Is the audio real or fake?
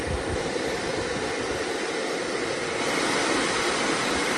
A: real